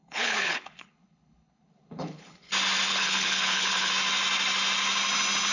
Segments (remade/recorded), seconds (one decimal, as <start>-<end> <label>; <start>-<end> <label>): 0.0-2.5 remade; 2.5-2.9 recorded; 2.9-3.9 remade; 3.9-5.5 recorded